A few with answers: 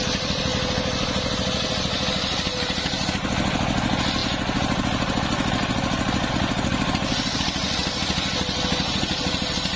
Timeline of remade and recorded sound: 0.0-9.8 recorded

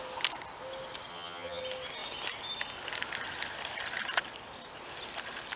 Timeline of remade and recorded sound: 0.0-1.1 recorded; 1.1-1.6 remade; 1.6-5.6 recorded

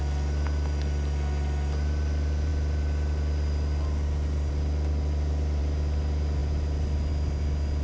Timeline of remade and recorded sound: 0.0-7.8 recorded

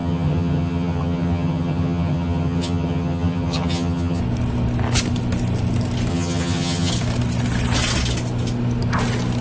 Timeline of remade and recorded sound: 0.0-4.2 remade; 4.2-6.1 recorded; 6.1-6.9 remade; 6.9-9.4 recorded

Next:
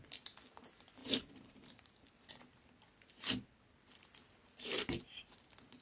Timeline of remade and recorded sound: 0.0-1.0 recorded; 1.0-2.3 remade; 2.3-5.8 recorded

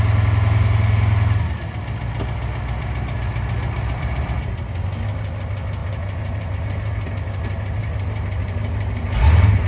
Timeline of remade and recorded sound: 0.0-5.8 recorded; 5.8-6.5 remade; 6.5-7.8 recorded; 7.8-9.7 remade